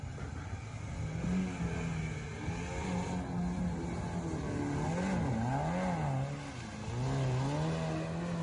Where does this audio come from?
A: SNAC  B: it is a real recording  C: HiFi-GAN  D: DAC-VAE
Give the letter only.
B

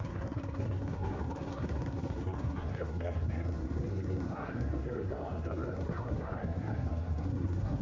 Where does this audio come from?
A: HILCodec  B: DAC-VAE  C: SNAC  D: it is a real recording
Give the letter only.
C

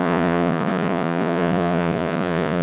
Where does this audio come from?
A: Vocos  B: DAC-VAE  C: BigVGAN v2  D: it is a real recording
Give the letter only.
A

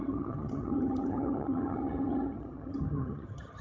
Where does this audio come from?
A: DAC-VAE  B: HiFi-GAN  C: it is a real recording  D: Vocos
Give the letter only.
B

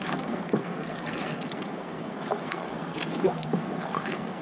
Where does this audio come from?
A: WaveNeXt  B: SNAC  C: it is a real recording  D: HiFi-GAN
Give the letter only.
B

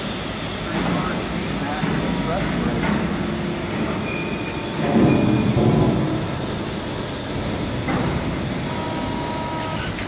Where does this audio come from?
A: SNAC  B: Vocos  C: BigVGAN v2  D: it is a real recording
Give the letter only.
D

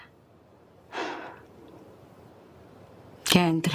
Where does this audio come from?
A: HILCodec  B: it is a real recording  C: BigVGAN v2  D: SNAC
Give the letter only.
C